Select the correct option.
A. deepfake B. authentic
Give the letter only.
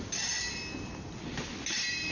B